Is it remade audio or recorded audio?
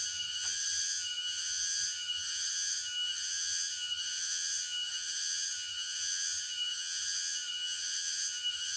remade